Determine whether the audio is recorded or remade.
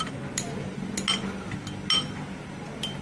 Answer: recorded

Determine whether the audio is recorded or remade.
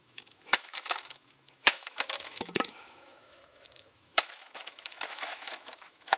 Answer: remade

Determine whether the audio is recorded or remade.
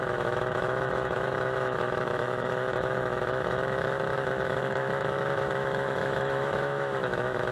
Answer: remade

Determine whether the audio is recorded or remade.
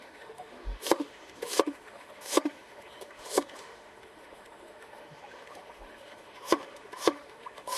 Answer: remade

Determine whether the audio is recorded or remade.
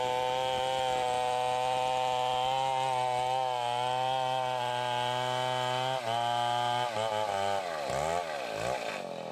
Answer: recorded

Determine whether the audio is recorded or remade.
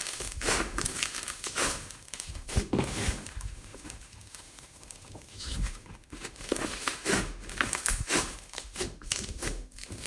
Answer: remade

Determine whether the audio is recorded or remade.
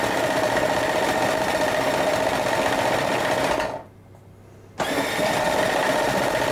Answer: recorded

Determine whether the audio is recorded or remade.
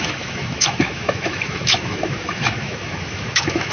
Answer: remade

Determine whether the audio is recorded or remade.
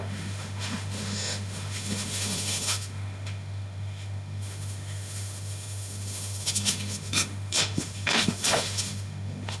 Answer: remade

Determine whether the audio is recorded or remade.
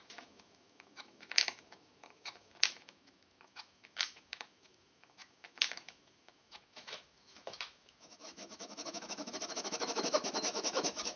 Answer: remade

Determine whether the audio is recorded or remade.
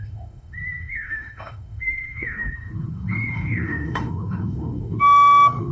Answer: remade